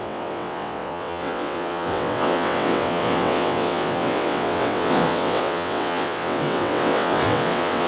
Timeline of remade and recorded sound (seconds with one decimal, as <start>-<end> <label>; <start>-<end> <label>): 0.0-7.9 remade